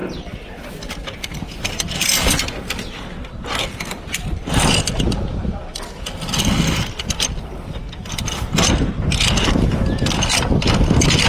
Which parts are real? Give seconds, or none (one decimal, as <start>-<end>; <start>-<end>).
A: 0.0-11.3